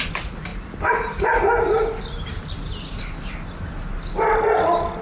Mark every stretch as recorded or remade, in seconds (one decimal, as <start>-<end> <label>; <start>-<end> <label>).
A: 0.0-5.0 recorded